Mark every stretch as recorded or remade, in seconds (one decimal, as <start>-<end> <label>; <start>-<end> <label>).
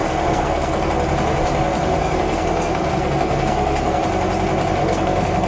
0.0-0.9 remade; 0.9-1.8 recorded; 1.8-4.0 remade; 4.0-4.8 recorded; 4.8-5.5 remade